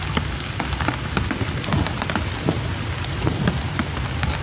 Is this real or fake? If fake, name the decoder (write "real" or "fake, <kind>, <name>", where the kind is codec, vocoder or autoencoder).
real